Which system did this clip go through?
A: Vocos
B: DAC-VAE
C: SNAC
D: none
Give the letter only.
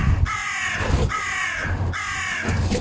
D